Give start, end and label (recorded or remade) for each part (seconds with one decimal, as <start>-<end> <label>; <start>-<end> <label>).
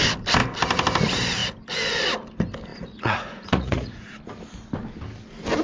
0.0-2.7 recorded; 2.7-4.2 remade; 4.2-5.6 recorded